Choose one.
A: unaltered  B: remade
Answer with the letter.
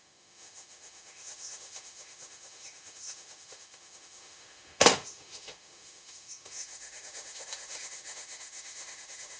B